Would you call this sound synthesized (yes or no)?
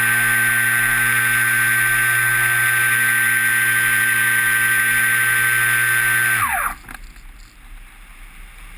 no